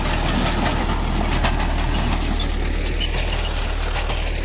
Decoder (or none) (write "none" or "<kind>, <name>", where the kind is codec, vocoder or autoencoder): none